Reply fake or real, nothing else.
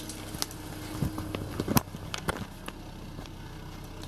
real